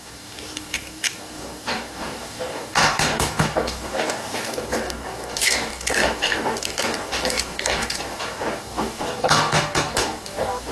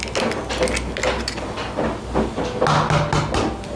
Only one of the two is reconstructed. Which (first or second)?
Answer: first